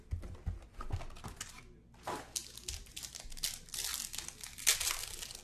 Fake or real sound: real